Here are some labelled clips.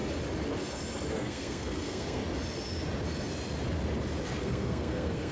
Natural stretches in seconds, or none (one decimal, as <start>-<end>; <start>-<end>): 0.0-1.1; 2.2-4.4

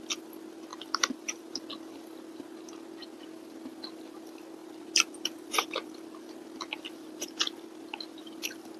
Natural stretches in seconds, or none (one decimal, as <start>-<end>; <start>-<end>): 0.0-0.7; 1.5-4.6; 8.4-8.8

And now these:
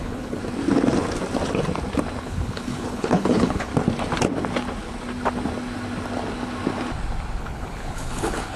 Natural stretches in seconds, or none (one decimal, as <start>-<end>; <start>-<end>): 0.4-2.2; 3.7-7.4

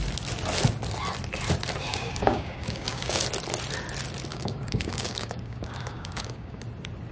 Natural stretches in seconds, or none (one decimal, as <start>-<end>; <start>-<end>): 0.0-1.9; 3.2-4.3; 6.6-7.1

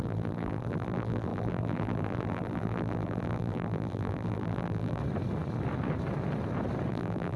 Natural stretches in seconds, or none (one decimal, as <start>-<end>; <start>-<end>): 5.0-6.9